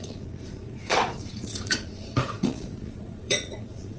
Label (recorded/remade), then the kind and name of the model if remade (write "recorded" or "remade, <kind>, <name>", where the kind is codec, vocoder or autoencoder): remade, vocoder, Vocos